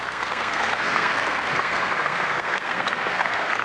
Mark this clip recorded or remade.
remade